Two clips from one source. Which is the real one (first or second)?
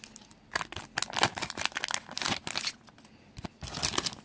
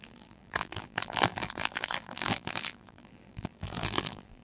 first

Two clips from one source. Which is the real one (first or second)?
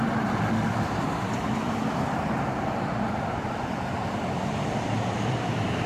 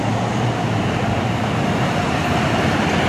second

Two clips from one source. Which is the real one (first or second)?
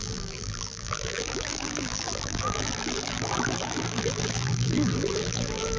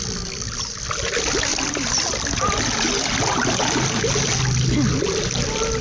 second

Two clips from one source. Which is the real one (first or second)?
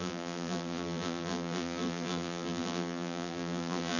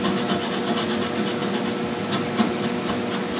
second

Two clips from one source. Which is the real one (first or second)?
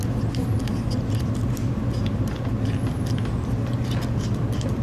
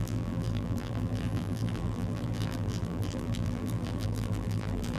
first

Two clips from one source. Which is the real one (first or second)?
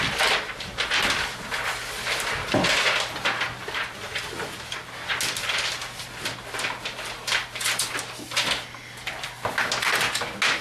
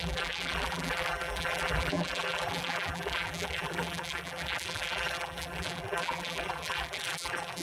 first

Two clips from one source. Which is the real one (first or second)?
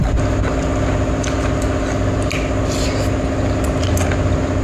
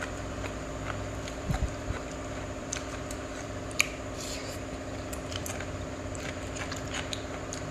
first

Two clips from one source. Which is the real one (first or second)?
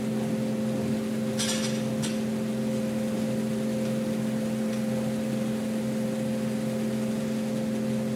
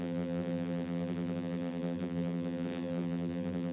first